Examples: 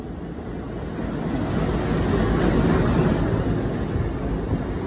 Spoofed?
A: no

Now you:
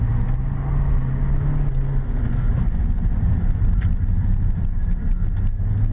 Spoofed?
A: no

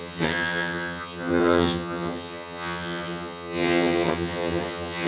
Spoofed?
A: yes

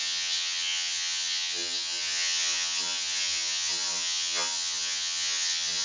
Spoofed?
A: yes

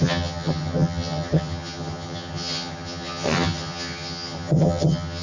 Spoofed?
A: yes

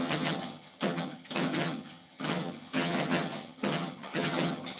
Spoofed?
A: yes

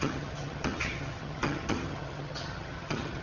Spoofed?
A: yes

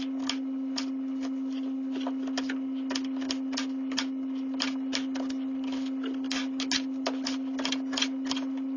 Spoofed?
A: no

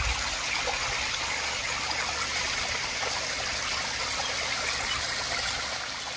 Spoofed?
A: no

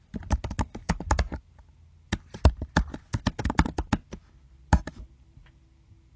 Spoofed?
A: no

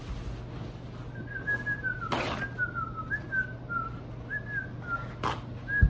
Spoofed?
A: no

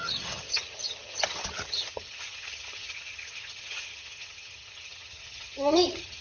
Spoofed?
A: yes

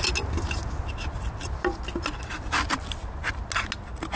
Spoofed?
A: no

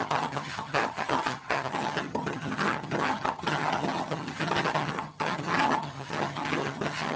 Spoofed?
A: yes